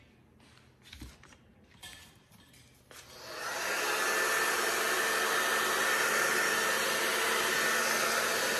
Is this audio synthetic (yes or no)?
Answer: no